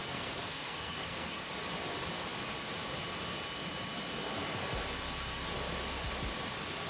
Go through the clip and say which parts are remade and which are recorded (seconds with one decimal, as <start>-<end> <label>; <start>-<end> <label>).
0.0-1.5 remade; 1.5-6.9 recorded